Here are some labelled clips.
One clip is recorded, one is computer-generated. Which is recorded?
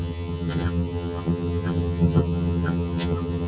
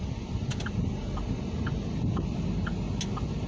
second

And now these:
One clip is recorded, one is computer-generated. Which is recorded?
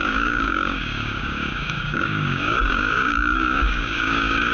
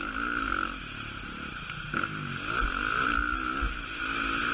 second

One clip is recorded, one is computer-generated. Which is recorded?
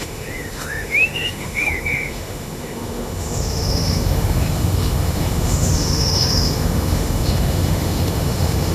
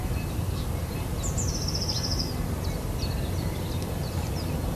second